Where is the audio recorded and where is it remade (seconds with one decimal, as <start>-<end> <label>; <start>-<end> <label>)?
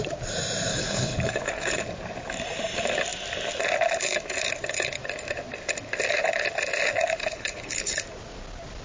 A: 0.0-0.7 recorded; 0.7-1.8 remade; 1.8-7.2 recorded; 7.2-8.0 remade; 8.0-8.8 recorded